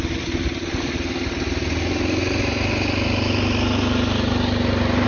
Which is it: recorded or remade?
recorded